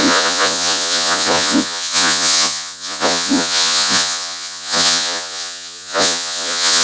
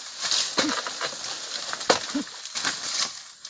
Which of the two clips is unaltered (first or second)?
second